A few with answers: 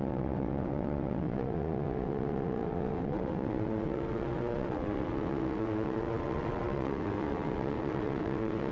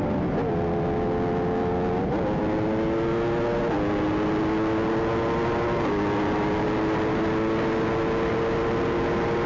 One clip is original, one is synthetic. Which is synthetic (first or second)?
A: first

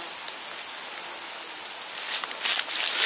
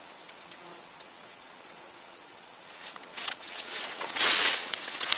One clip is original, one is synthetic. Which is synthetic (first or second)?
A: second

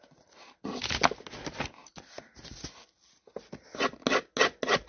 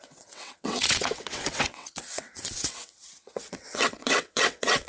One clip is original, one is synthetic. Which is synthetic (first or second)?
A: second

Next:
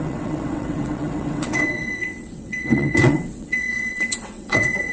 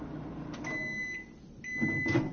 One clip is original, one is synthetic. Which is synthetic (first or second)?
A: first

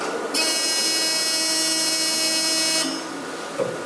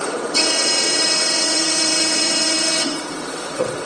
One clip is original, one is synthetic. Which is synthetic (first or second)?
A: second